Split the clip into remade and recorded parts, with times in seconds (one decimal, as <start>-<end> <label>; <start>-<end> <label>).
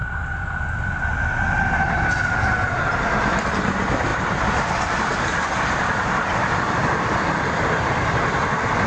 0.0-8.9 recorded